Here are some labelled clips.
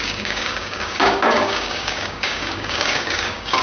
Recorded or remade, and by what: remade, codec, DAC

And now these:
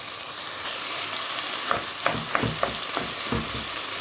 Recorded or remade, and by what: recorded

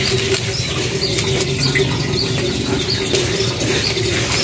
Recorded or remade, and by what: recorded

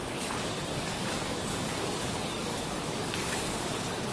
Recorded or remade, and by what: remade, codec, DAC